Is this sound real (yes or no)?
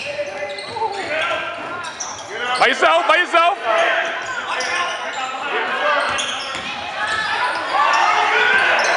yes